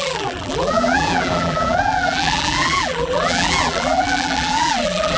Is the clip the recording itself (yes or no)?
no